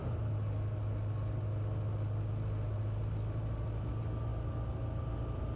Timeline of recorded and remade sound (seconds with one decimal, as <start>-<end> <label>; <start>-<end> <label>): 0.0-5.6 recorded